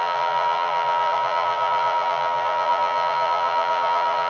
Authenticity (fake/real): fake